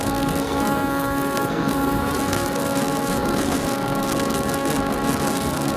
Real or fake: fake